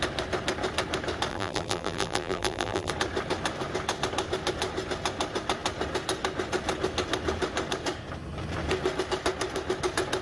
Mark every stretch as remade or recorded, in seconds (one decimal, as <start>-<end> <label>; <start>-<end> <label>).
0.0-1.3 recorded; 1.3-2.9 remade; 2.9-10.2 recorded